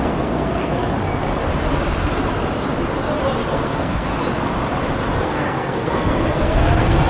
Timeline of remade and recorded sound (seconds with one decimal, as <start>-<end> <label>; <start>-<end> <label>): 0.0-0.8 remade; 0.8-3.5 recorded; 3.5-4.1 remade; 4.1-5.2 recorded; 5.2-7.1 remade